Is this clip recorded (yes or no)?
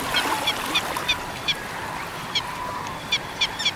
yes